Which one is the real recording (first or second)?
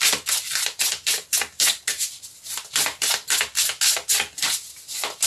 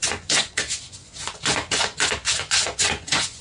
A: first